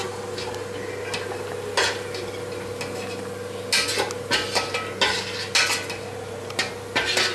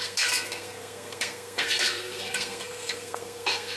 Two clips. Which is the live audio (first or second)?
first